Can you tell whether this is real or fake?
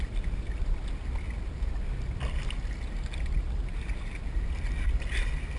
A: real